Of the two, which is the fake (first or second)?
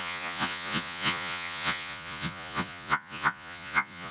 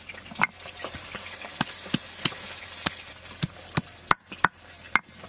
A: first